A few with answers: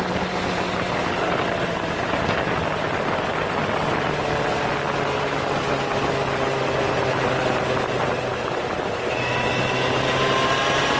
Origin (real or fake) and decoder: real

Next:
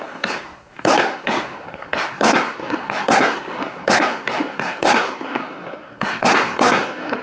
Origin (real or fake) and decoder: fake, codec, SNAC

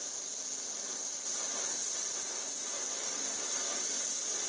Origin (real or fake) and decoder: real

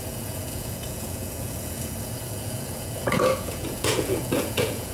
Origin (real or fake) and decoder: fake, vocoder, Vocos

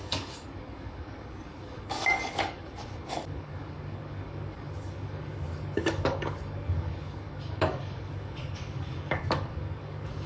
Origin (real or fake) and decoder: fake, codec, DAC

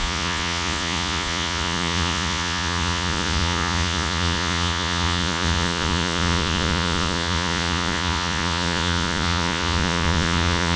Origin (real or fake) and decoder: fake, vocoder, Vocos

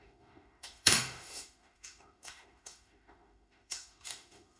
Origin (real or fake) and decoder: fake, autoencoder, DAC-VAE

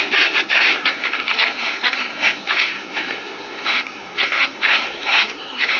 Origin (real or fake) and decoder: fake, codec, SNAC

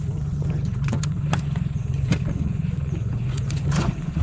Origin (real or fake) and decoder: fake, vocoder, Vocos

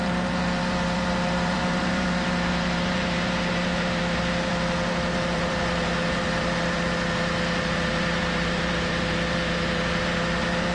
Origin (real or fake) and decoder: fake, vocoder, BigVGAN v2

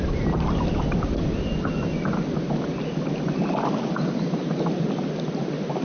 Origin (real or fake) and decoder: real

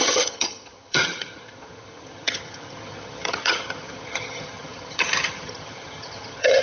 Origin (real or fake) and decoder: fake, vocoder, HiFi-GAN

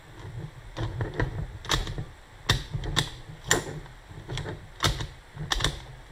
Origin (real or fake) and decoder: real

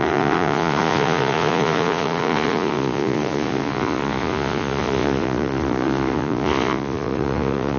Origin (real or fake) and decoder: fake, vocoder, Vocos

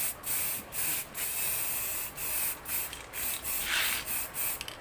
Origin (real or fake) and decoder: real